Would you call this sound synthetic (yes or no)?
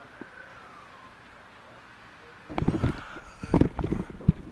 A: no